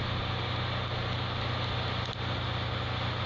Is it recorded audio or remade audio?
recorded